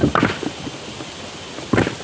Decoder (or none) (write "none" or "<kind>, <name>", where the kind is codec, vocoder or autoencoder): none